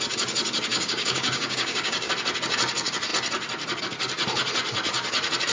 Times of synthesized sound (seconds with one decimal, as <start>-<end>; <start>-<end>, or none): 0.7-2.1